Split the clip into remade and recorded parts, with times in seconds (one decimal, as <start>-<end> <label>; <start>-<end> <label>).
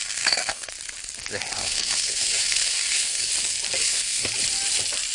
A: 0.0-0.7 remade; 0.7-1.6 recorded; 1.6-3.3 remade; 3.3-3.8 recorded; 3.8-4.3 remade; 4.3-5.1 recorded